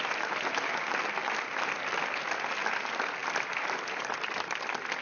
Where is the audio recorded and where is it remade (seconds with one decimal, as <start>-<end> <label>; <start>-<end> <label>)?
0.0-5.0 recorded